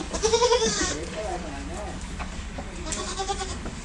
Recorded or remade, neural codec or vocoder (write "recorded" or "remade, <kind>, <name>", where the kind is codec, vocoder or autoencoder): remade, codec, DAC